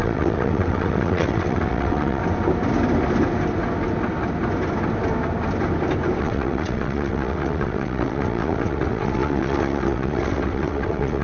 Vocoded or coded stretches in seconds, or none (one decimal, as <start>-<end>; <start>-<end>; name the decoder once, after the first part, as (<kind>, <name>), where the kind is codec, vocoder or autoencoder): 0.0-2.2 (vocoder, WaveNeXt); 6.2-11.2